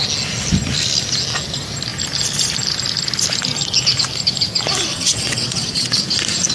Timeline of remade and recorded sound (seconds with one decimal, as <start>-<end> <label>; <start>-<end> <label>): 0.0-4.9 recorded; 4.9-6.0 remade; 6.0-6.5 recorded